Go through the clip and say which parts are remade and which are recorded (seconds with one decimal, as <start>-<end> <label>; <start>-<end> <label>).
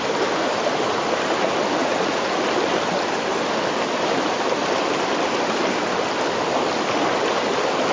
0.0-1.8 recorded; 1.8-2.4 remade; 2.4-7.9 recorded